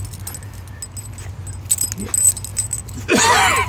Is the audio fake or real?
real